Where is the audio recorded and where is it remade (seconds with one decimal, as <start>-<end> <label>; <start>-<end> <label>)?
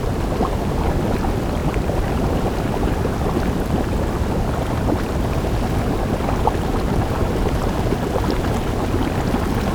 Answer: 0.0-9.7 recorded